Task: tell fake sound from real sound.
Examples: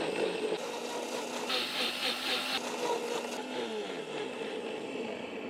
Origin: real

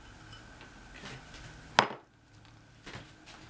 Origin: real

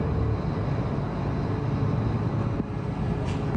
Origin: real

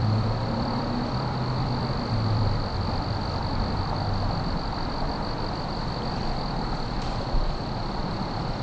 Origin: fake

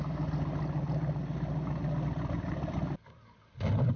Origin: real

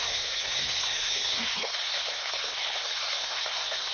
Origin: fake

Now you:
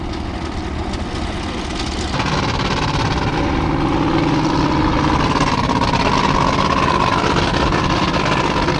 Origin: real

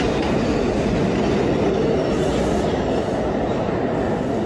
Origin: real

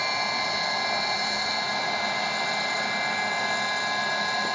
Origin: real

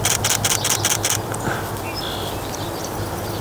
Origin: real